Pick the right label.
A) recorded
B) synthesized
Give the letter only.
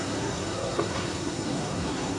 B